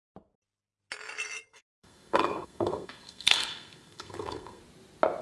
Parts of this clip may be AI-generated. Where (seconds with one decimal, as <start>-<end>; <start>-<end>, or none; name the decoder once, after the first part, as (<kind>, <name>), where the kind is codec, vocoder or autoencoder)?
1.5-4.6 (codec, SNAC)